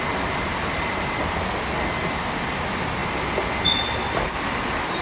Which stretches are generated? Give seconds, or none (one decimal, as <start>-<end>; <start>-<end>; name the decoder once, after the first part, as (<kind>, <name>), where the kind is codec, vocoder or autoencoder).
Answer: none

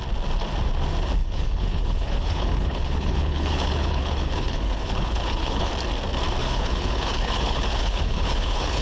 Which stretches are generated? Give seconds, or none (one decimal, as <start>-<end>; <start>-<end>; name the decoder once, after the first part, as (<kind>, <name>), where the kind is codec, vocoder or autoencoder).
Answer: 1.2-5.7 (codec, HILCodec); 6.4-8.8

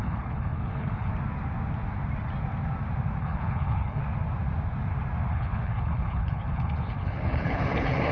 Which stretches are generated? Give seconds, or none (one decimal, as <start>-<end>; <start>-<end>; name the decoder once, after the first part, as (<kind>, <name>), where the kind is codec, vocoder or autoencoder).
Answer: 0.0-1.1 (codec, HILCodec); 3.2-4.0; 5.3-8.1

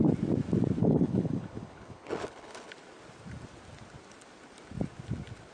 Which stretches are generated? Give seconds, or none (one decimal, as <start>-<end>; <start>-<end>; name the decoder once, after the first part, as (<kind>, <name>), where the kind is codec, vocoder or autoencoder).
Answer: 0.8-2.7 (codec, HILCodec)

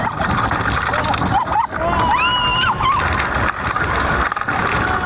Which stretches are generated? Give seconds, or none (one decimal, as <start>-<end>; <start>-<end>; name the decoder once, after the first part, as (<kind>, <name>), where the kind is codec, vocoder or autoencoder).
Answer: none

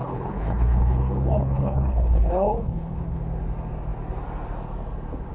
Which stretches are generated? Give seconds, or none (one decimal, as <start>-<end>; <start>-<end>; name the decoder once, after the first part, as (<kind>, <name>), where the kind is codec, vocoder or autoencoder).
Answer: 0.0-3.2 (codec, HILCodec)

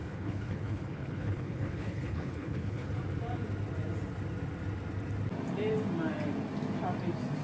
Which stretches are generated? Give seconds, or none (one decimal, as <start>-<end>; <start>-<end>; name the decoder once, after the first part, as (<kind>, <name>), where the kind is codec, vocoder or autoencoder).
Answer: 0.0-2.9 (codec, HILCodec)